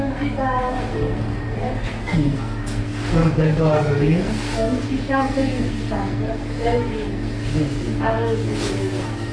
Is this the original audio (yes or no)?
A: no